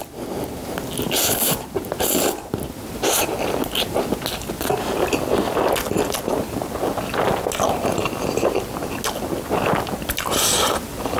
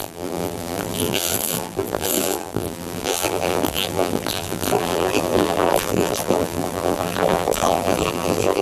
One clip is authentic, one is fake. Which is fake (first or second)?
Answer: second